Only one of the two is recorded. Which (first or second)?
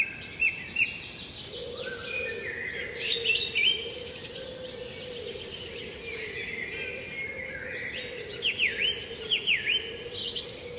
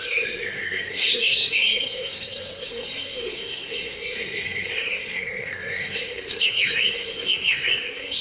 first